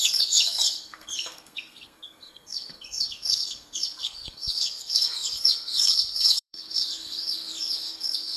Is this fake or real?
fake